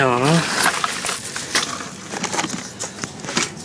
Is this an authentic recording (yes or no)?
yes